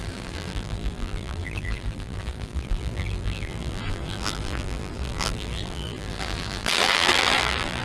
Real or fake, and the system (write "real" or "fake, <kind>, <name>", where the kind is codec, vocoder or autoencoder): fake, vocoder, BigVGAN v2